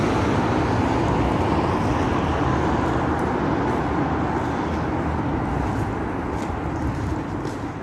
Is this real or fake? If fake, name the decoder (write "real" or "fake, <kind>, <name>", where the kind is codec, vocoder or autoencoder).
real